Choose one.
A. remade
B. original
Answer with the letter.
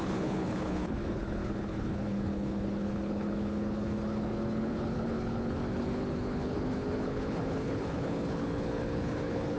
A